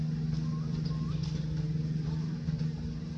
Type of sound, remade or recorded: recorded